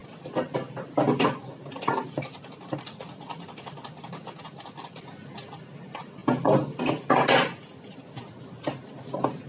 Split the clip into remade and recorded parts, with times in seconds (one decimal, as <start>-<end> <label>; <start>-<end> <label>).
0.0-9.5 recorded